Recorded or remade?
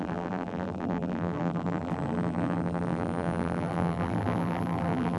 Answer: remade